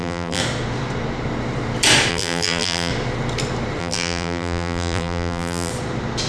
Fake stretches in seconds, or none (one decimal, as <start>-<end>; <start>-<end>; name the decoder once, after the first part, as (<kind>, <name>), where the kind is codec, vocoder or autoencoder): 0.0-0.4 (vocoder, BigVGAN v2); 2.1-2.9; 3.8-5.7

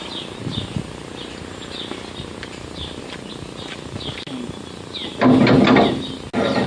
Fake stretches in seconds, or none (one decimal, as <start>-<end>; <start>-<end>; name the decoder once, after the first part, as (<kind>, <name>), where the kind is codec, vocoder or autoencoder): none

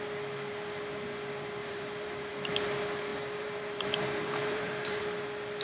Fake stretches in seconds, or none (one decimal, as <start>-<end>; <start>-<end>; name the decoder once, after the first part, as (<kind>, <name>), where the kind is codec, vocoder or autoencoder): 1.6-2.3 (vocoder, BigVGAN v2); 3.1-5.0